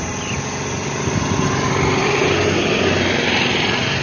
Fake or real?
real